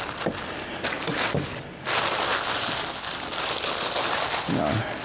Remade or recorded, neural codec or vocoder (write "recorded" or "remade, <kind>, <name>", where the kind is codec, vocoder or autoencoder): recorded